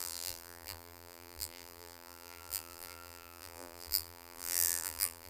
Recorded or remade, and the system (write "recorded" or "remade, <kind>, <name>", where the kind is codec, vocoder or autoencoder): remade, vocoder, BigVGAN v2